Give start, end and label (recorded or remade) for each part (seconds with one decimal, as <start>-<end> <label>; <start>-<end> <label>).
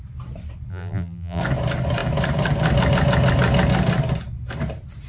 0.0-0.7 recorded; 0.7-1.4 remade; 1.4-5.1 recorded